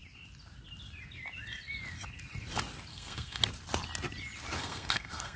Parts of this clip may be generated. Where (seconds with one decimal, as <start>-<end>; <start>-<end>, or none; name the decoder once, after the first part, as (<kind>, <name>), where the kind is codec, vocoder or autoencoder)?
2.9-3.4 (codec, SNAC); 4.6-5.4